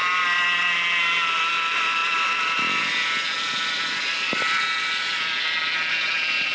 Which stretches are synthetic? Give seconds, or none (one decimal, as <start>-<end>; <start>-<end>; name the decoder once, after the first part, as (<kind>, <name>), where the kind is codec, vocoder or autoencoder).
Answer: 1.5-6.5 (vocoder, BigVGAN v2)